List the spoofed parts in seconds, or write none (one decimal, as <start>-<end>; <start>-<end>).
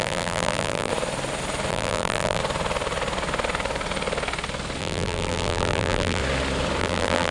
0.0-0.9; 1.7-2.4; 4.8-6.2; 6.8-7.3